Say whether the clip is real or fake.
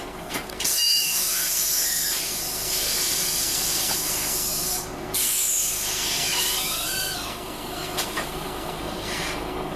fake